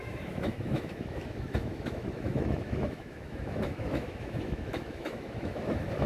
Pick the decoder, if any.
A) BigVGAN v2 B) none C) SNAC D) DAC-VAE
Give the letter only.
D